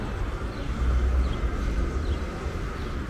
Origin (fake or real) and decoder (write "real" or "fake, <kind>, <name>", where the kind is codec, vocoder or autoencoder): real